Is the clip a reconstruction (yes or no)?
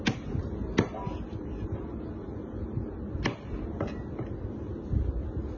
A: no